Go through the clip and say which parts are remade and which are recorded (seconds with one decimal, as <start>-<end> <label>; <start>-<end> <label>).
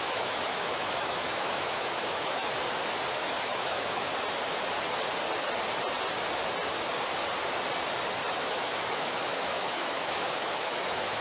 0.0-2.4 remade; 2.4-3.1 recorded; 3.1-4.1 remade; 4.1-8.3 recorded; 8.3-11.2 remade